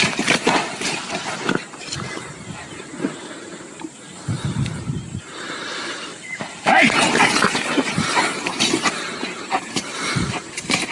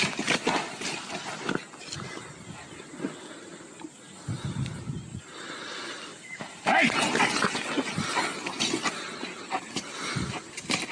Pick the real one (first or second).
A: second